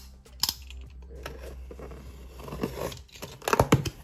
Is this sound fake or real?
real